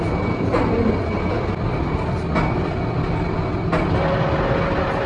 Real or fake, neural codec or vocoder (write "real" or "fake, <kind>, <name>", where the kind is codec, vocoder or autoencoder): real